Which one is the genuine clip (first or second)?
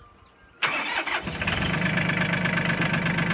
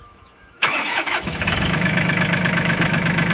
first